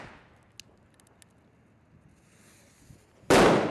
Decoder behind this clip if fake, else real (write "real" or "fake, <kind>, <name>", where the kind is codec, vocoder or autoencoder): real